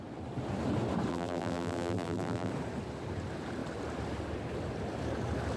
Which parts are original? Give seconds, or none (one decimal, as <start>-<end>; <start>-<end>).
0.0-1.1; 2.5-5.6